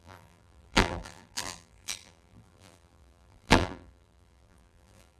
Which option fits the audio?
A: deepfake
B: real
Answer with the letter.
A